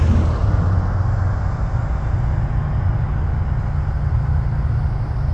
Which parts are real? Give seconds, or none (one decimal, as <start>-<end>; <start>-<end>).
0.0-5.3